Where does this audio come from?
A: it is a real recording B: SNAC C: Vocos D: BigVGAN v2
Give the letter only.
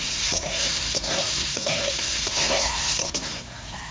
B